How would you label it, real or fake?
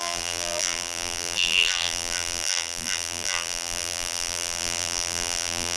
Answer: fake